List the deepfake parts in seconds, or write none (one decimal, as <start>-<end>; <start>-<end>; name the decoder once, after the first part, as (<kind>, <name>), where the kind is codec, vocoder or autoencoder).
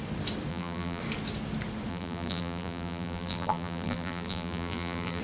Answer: 0.5-1.0 (vocoder, BigVGAN v2); 1.9-5.2